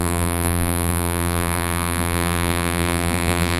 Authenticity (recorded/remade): remade